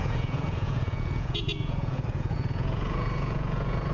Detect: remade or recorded remade